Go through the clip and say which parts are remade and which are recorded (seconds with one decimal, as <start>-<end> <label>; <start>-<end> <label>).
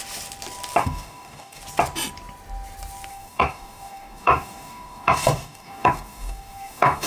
0.0-0.8 recorded; 0.8-1.6 remade; 1.6-3.1 recorded; 3.1-7.1 remade